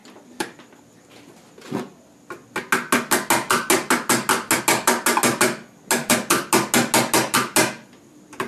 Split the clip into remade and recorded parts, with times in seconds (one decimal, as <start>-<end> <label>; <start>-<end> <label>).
0.0-8.5 recorded